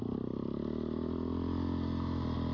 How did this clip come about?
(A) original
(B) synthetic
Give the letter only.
A